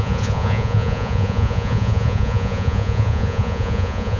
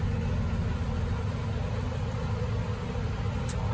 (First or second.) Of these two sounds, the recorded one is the second